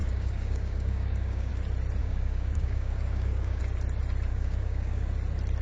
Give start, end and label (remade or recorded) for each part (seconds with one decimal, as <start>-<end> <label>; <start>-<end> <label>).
0.0-1.5 remade; 1.5-2.0 recorded; 2.0-3.6 remade; 3.6-4.3 recorded; 4.3-5.1 remade; 5.1-5.6 recorded